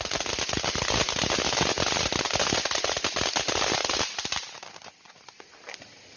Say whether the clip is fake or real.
real